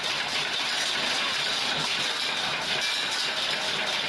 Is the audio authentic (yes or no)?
yes